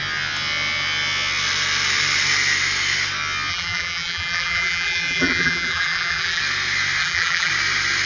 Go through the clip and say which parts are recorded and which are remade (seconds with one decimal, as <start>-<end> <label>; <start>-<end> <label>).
0.0-3.5 recorded; 3.5-6.4 remade; 6.4-7.0 recorded; 7.0-7.5 remade; 7.5-8.1 recorded